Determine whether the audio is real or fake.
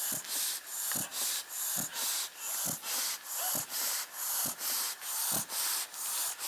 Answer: real